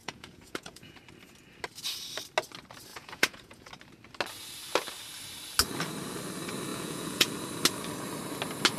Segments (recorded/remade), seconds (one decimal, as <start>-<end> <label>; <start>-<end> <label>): 0.0-1.0 remade; 1.0-2.9 recorded; 2.9-3.7 remade; 3.7-6.7 recorded; 6.7-7.3 remade; 7.3-8.8 recorded